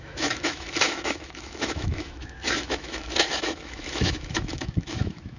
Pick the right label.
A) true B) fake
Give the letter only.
B